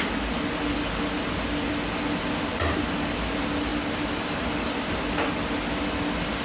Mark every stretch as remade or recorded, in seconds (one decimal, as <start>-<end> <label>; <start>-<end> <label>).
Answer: 0.0-6.4 recorded